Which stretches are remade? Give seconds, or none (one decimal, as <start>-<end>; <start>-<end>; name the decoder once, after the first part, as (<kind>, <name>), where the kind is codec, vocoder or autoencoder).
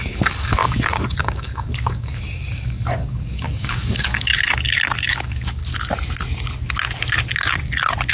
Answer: 0.0-4.3 (codec, DAC); 5.1-5.6